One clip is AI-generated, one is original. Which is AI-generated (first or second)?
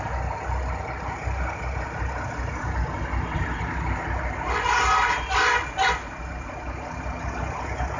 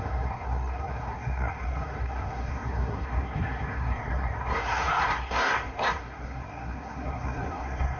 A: second